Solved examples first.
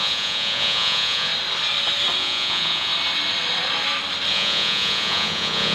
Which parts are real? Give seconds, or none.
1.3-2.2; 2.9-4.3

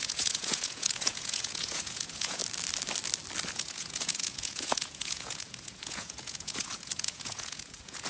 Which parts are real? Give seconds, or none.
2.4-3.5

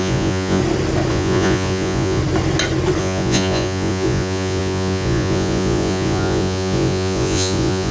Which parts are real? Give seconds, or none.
0.6-1.1; 2.2-3.0

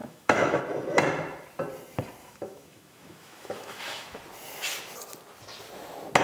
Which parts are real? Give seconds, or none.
0.6-2.2; 4.2-6.2